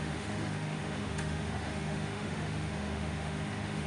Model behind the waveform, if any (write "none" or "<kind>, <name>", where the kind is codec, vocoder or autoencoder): autoencoder, DAC-VAE